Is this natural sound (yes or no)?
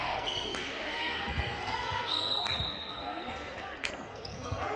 no